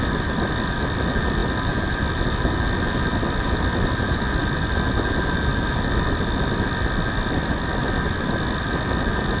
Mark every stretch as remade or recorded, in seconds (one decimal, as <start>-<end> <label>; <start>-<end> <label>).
0.0-9.4 recorded